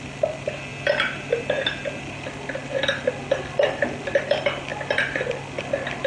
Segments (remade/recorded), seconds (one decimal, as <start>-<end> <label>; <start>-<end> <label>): 0.0-6.1 recorded